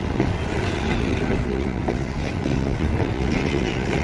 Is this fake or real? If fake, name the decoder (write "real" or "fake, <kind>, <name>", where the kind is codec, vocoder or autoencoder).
fake, vocoder, WaveNeXt